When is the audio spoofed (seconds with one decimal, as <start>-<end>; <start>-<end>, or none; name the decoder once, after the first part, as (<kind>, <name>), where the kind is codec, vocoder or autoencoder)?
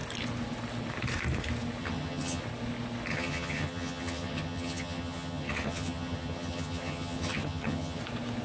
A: 1.8-2.4 (vocoder, HiFi-GAN); 3.1-8.0